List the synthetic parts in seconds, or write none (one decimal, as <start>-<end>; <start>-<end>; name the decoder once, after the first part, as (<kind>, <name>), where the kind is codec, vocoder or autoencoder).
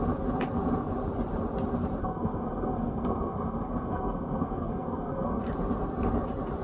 2.0-5.4 (codec, SNAC)